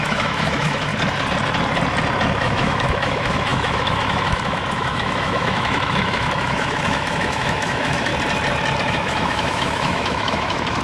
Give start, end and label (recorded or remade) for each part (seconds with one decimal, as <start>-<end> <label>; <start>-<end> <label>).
0.0-0.9 remade; 0.9-2.4 recorded; 2.4-8.1 remade; 8.1-8.9 recorded; 8.9-10.8 remade